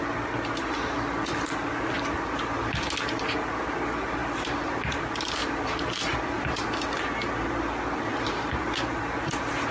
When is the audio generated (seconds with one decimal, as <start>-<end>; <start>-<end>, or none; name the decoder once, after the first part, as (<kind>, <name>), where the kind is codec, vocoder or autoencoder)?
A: 4.2-5.0 (vocoder, BigVGAN v2); 8.1-9.0